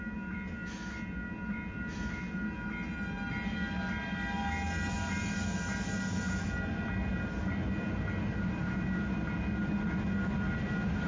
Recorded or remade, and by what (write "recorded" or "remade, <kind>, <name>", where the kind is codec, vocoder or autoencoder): recorded